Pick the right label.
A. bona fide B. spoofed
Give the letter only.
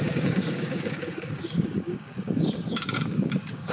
B